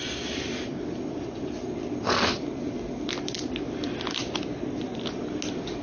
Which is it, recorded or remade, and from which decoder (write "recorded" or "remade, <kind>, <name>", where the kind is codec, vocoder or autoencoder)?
recorded